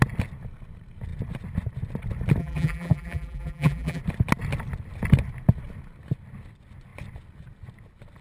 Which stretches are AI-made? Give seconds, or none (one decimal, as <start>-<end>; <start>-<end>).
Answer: 2.4-4.0